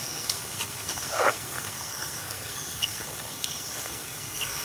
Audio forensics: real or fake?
fake